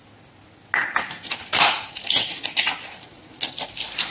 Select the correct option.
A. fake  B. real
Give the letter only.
B